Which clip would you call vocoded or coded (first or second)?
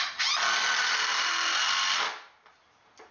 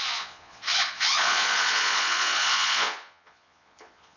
second